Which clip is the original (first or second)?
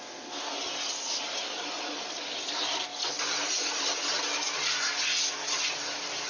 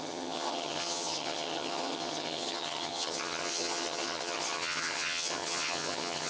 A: first